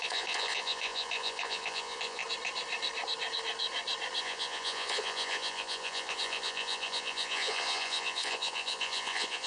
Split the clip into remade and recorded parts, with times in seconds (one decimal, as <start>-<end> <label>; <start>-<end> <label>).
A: 0.0-2.2 remade; 2.2-4.2 recorded; 4.2-9.5 remade